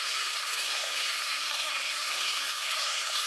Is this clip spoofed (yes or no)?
yes